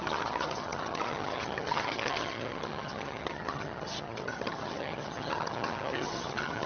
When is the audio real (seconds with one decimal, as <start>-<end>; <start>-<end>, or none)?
none